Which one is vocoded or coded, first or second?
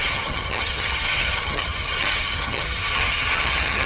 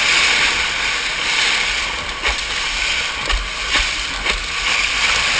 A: first